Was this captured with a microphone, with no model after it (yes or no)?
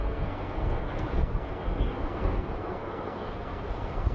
no